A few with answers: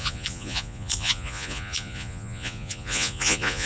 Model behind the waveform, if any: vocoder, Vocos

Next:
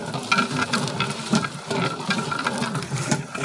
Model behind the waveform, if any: none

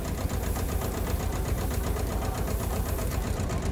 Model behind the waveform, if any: none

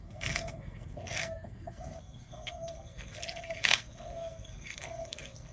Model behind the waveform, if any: codec, SNAC